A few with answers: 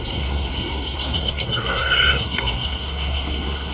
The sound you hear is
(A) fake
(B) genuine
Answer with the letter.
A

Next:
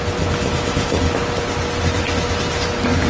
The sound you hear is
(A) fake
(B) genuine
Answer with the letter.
B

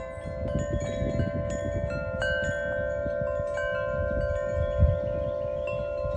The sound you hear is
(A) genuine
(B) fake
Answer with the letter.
A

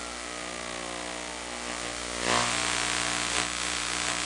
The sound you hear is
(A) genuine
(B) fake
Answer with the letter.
A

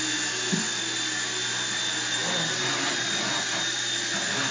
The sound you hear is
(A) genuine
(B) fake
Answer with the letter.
A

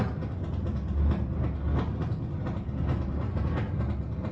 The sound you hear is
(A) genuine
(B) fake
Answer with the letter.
A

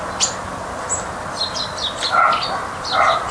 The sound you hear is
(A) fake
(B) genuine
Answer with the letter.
B